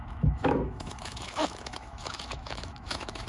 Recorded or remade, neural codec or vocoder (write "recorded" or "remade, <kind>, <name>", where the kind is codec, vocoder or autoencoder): remade, autoencoder, DAC-VAE